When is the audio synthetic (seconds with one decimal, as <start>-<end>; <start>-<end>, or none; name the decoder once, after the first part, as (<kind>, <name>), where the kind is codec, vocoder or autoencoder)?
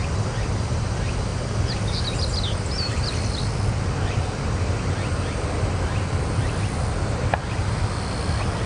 none